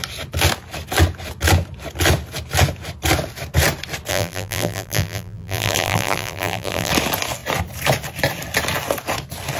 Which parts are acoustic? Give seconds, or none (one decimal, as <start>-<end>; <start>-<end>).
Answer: 0.0-4.1; 6.9-9.6